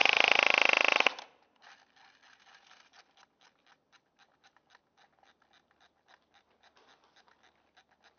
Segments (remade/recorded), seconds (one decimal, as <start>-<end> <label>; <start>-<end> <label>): 0.0-0.7 remade; 0.7-8.2 recorded